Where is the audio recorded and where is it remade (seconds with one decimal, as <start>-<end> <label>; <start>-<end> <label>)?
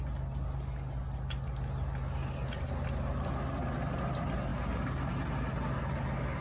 0.0-6.4 recorded